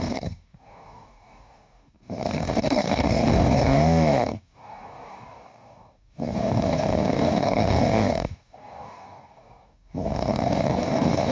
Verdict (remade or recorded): remade